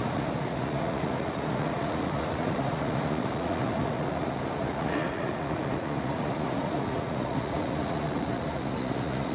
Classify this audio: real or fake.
fake